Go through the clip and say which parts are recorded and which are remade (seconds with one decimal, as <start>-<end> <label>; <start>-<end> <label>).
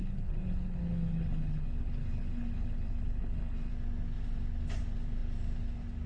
0.0-3.7 remade; 3.7-6.1 recorded